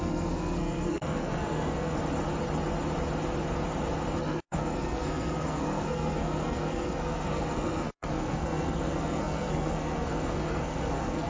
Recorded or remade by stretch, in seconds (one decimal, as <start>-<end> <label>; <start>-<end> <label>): 0.0-2.0 remade; 2.0-4.2 recorded; 4.2-11.3 remade